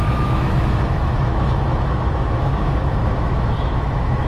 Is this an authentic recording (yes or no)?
no